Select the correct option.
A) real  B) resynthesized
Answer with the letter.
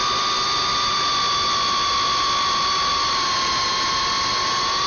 A